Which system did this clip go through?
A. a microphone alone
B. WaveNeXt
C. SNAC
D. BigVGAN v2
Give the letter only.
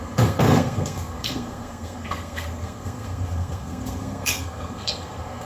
C